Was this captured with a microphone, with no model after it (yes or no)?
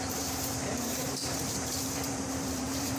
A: no